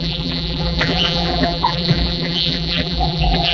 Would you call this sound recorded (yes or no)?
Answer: no